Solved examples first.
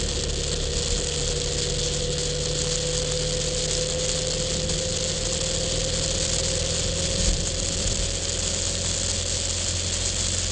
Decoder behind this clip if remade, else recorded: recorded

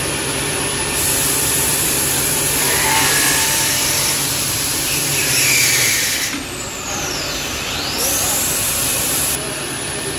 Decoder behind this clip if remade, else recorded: remade, vocoder, BigVGAN v2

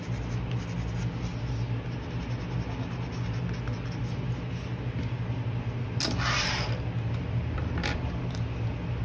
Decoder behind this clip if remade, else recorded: recorded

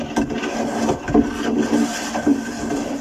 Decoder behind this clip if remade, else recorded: remade, vocoder, BigVGAN v2